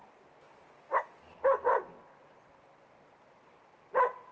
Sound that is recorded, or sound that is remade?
recorded